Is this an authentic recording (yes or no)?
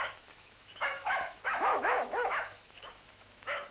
no